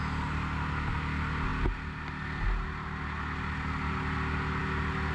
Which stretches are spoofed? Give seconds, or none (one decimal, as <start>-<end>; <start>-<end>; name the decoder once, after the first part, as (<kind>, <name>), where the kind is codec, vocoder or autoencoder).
none